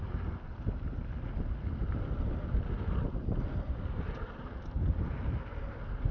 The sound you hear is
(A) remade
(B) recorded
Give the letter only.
B